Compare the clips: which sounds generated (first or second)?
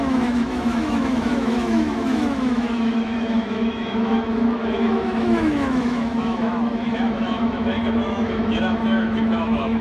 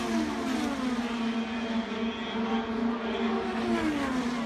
first